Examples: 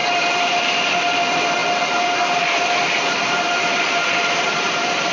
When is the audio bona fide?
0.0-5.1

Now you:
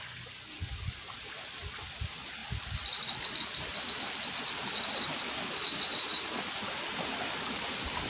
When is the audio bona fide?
0.0-8.1

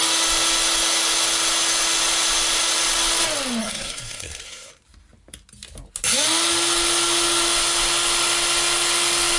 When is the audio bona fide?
0.0-3.6; 4.7-9.4

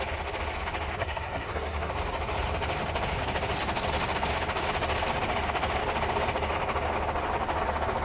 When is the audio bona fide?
0.0-1.0; 1.9-8.0

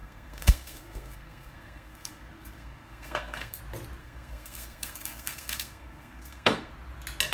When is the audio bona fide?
3.6-4.0; 6.7-7.3

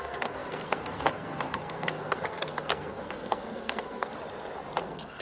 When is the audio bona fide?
4.1-4.8

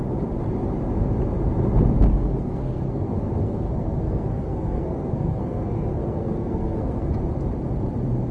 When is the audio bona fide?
0.0-2.1; 7.1-8.3